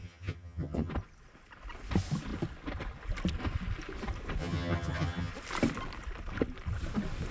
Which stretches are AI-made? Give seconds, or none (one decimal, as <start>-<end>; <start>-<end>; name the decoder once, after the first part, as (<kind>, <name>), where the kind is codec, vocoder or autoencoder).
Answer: 0.0-0.9 (vocoder, HiFi-GAN); 4.4-5.3